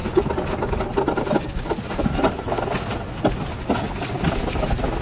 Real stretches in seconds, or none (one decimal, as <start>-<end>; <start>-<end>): 0.0-5.0